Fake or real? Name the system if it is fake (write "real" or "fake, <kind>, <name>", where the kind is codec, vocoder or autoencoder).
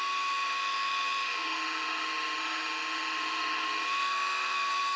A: fake, autoencoder, DAC-VAE